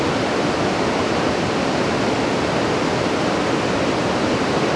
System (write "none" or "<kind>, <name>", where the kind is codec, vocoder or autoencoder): none